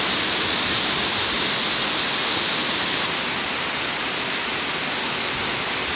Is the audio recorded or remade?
recorded